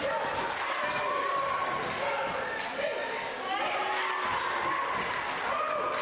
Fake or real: real